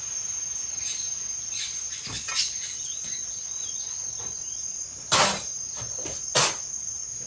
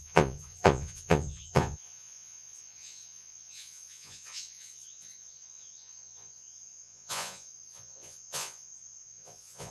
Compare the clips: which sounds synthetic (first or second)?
second